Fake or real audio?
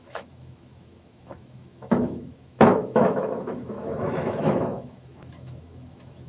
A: fake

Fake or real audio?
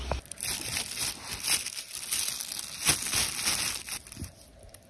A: real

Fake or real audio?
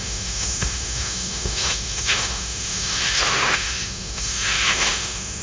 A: fake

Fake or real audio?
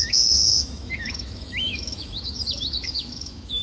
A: fake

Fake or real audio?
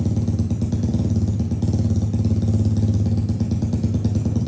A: real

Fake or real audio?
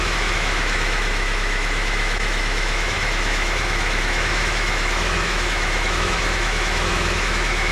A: fake